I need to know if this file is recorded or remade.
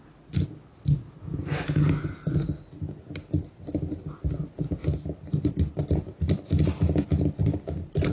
recorded